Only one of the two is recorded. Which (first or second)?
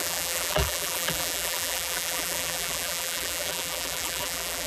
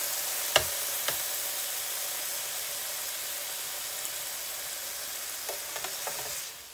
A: second